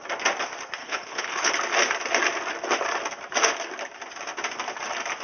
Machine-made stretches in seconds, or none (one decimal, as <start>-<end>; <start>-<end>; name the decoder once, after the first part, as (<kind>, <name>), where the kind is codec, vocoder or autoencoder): 0.8-1.5 (codec, HILCodec)